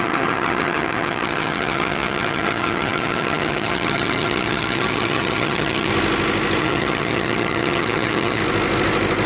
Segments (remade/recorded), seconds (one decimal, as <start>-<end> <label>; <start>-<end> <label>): 0.0-5.9 remade; 5.9-6.6 recorded; 6.6-8.4 remade; 8.4-9.3 recorded